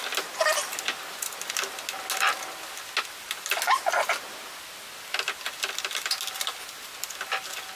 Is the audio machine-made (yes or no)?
no